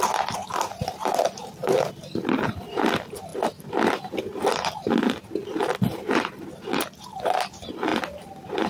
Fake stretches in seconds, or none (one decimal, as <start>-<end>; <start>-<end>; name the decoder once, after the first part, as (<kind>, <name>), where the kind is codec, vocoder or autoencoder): 1.6-2.3 (vocoder, BigVGAN v2)